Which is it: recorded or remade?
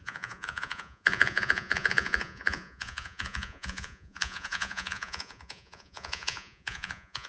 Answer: remade